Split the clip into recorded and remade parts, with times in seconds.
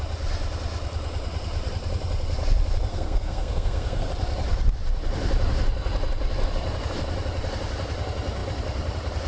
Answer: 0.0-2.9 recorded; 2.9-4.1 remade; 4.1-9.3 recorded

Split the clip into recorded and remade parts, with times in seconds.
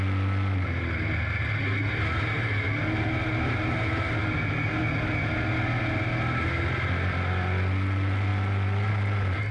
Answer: 0.0-9.5 recorded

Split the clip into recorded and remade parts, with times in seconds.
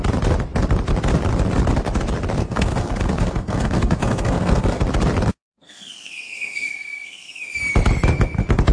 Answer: 0.0-2.4 recorded; 2.4-4.8 remade; 4.8-5.3 recorded; 5.3-7.5 remade; 7.5-8.7 recorded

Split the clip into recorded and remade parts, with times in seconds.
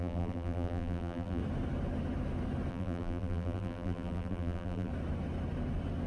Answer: 0.0-1.4 remade; 1.4-2.7 recorded; 2.7-4.9 remade; 4.9-6.1 recorded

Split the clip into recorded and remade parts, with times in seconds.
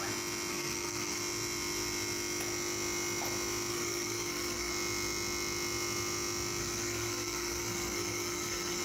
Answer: 0.0-0.5 recorded; 0.5-1.2 remade; 1.2-3.7 recorded; 3.7-4.7 remade; 4.7-6.6 recorded; 6.6-8.8 remade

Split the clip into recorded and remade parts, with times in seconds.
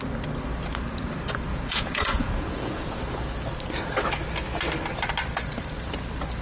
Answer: 0.0-1.5 recorded; 1.5-3.0 remade; 3.0-6.4 recorded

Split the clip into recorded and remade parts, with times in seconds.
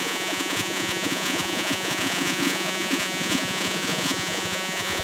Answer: 0.0-5.0 remade